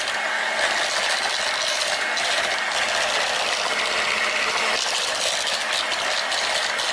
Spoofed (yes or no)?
no